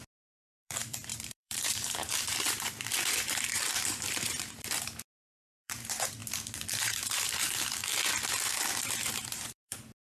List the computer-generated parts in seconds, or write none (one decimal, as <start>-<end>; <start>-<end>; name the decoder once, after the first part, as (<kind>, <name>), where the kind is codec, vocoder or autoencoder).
0.0-6.2 (vocoder, BigVGAN v2); 6.8-7.9; 8.8-10.1